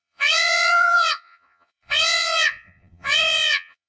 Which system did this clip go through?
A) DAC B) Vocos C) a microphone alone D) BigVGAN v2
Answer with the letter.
B